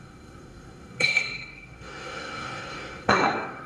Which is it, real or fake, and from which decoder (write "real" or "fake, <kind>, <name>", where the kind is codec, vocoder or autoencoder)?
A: fake, codec, SNAC